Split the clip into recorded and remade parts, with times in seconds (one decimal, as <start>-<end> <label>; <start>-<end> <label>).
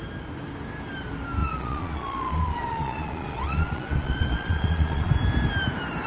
0.0-1.4 recorded; 1.4-5.1 remade; 5.1-6.1 recorded